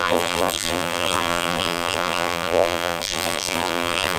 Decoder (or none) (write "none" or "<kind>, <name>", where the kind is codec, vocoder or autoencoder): vocoder, BigVGAN v2